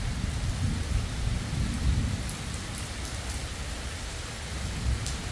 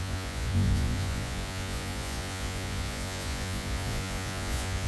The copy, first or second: second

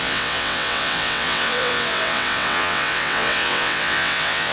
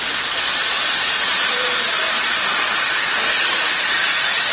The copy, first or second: first